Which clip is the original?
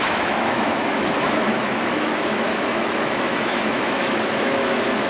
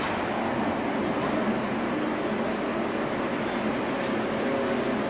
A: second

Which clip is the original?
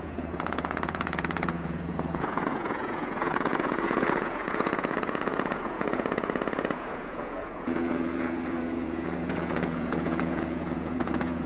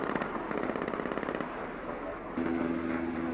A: second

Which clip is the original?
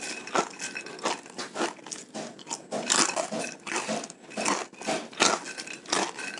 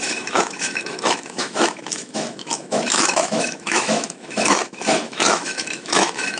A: first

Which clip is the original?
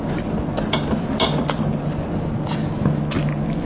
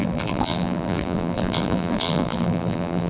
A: first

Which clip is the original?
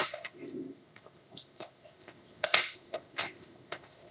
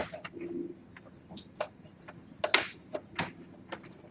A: second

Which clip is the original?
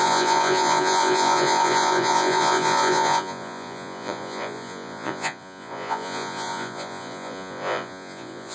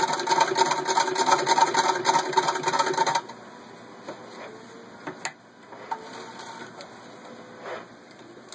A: second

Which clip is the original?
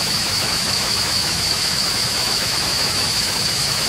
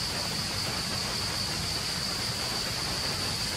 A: second